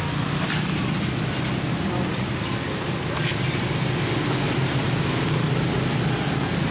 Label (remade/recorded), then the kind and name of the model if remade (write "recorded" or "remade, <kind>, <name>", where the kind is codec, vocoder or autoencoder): recorded